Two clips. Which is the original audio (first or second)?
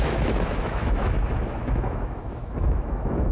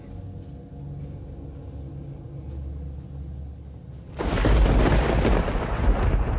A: second